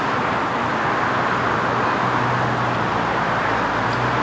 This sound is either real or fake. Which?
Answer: real